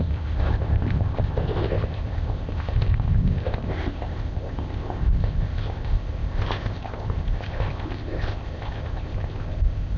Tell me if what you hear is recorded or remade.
remade